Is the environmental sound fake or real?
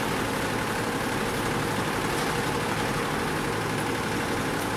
real